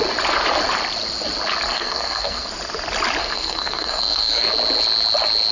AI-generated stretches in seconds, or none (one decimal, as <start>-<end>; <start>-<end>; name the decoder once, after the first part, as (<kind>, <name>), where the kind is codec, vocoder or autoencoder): 1.7-2.5 (codec, SNAC); 3.2-4.5